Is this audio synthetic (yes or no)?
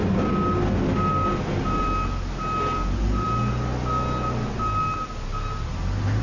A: no